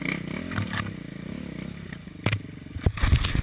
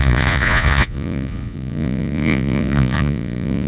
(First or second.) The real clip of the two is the first